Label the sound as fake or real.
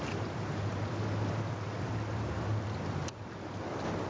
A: real